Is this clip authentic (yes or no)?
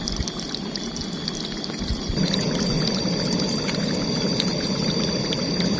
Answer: no